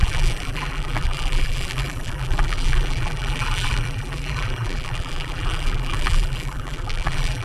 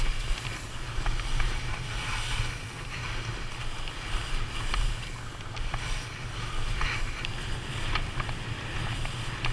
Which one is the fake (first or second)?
first